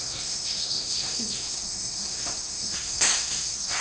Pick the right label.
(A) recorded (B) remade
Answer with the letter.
B